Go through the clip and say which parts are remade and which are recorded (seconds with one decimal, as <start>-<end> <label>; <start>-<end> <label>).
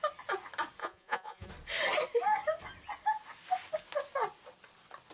0.0-0.8 recorded; 0.8-1.5 remade; 1.5-5.1 recorded